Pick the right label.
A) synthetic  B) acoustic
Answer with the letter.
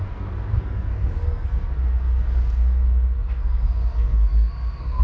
A